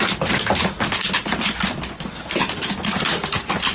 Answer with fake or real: real